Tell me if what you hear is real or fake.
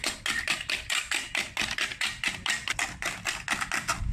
real